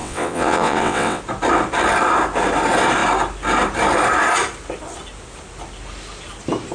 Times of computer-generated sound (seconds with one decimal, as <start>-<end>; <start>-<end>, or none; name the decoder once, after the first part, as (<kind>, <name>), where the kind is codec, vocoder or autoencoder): 0.0-1.2 (vocoder, WaveNeXt)